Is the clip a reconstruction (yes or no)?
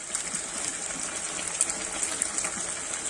no